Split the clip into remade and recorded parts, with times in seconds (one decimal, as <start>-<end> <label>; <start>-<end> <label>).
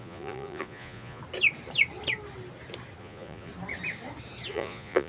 0.0-1.2 remade; 1.2-3.0 recorded; 3.0-3.5 remade; 3.5-4.5 recorded; 4.5-5.1 remade